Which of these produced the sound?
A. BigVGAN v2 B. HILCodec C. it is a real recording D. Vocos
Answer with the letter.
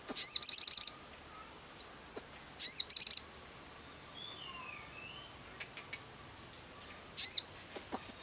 C